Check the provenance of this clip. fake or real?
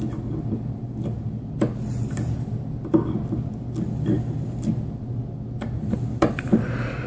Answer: real